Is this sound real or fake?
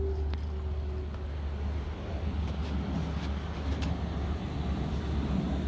real